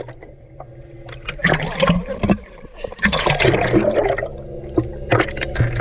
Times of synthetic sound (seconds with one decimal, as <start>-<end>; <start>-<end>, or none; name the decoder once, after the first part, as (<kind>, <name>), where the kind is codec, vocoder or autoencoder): 1.4-3.3 (vocoder, BigVGAN v2)